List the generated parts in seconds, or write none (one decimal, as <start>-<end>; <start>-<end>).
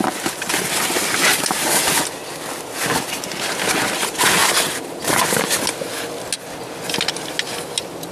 4.4-5.6